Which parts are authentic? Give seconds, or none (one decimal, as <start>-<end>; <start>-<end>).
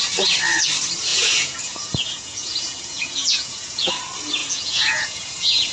0.0-1.1; 3.9-4.4